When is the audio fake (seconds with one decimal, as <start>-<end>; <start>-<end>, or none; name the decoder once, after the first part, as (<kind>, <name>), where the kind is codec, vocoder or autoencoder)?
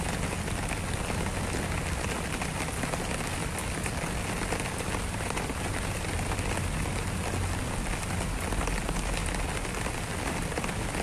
9.2-10.0 (vocoder, BigVGAN v2)